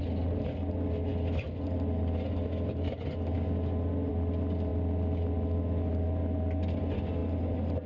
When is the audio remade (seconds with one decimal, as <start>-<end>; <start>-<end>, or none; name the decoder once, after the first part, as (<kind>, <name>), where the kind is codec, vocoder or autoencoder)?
none